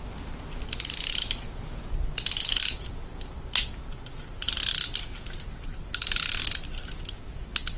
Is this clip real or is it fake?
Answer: real